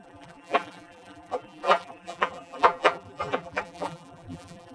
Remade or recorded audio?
remade